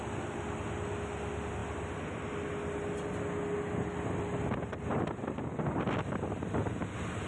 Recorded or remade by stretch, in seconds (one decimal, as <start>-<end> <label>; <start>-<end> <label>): 0.0-7.3 recorded